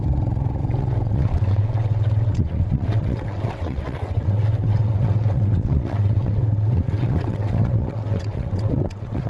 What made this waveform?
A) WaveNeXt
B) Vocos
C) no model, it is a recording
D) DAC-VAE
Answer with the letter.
A